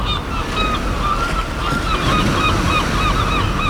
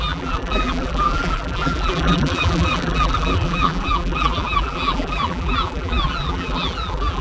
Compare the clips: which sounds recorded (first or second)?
first